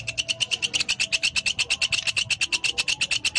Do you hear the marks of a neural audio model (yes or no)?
no